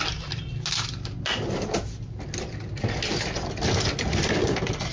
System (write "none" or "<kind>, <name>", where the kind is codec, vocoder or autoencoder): none